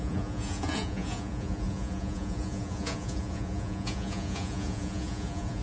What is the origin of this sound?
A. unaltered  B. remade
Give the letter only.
B